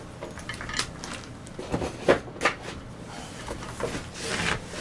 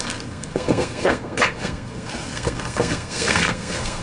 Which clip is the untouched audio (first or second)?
first